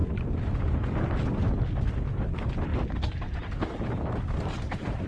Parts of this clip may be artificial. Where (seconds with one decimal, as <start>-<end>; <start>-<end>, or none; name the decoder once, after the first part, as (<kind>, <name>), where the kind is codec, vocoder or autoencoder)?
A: 2.2-2.7 (vocoder, BigVGAN v2); 3.8-5.1